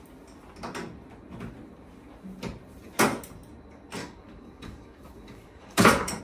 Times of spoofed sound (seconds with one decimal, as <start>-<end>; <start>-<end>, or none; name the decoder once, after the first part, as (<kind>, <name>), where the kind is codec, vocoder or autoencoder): 4.0-6.2 (codec, DAC)